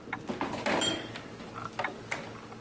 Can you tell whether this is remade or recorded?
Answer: recorded